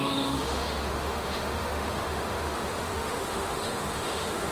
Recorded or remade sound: remade